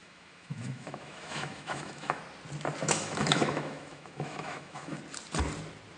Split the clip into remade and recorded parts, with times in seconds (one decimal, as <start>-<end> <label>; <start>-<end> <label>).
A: 0.0-2.2 remade; 2.2-2.8 recorded; 2.8-5.0 remade; 5.0-6.0 recorded